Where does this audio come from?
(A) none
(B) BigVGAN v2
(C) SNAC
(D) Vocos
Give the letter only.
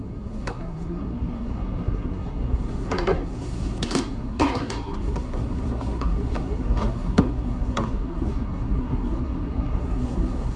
C